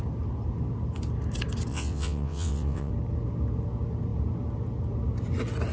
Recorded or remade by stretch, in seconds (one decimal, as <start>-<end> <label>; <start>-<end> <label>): 0.0-1.7 recorded; 1.7-2.9 remade; 2.9-5.7 recorded